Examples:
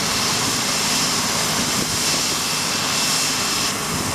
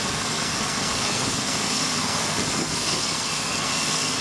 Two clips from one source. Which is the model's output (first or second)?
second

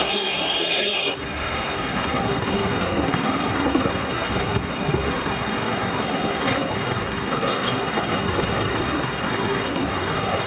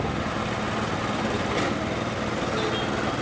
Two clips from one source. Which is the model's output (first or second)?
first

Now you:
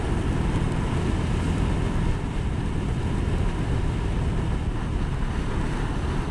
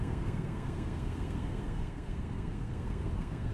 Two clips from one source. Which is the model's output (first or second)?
second